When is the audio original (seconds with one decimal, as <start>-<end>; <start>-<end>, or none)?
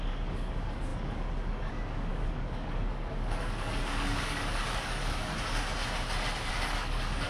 5.3-6.5